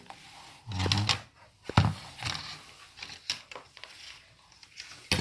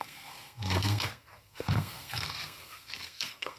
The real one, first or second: first